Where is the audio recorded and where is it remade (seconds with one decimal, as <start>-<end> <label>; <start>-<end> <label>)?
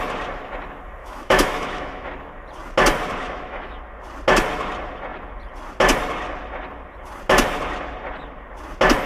0.0-1.0 recorded; 1.0-2.1 remade; 2.1-3.2 recorded; 3.2-3.8 remade; 3.8-9.1 recorded